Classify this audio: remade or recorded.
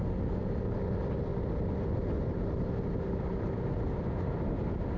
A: recorded